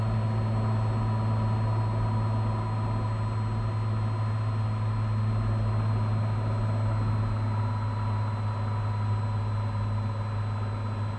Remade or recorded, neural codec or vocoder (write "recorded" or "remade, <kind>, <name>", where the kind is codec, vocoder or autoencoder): recorded